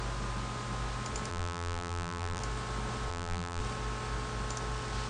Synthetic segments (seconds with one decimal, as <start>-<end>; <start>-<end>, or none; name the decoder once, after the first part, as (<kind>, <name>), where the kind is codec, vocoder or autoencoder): 1.3-2.4 (vocoder, BigVGAN v2); 3.1-3.6